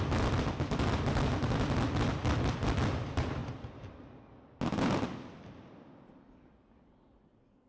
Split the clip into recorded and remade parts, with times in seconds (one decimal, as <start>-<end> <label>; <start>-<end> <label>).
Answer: 0.0-7.7 recorded